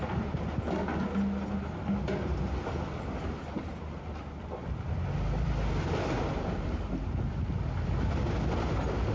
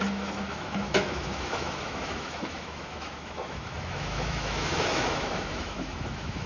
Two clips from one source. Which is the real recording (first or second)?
first